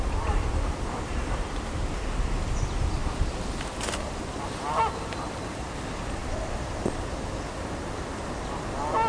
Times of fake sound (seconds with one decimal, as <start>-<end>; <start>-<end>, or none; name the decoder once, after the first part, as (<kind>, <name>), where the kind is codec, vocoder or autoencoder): none